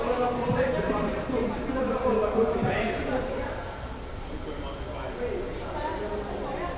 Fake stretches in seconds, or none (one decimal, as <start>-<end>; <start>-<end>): 0.4-4.1

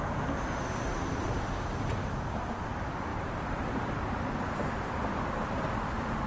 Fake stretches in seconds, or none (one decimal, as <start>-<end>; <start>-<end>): 3.1-4.3

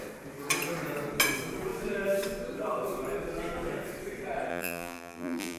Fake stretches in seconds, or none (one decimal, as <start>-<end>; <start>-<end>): 4.5-5.6

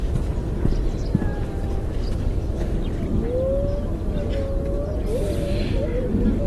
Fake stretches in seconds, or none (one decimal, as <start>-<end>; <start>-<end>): none